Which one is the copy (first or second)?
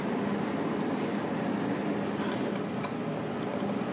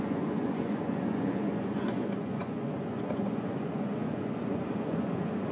second